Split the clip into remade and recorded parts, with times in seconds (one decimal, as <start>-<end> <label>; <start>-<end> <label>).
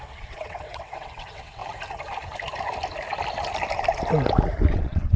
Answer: 0.0-1.6 remade; 1.6-4.7 recorded; 4.7-5.2 remade